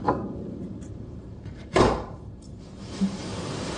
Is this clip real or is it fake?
fake